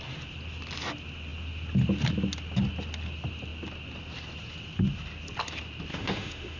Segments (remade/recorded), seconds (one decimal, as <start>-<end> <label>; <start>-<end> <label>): 0.0-5.9 recorded; 5.9-6.6 remade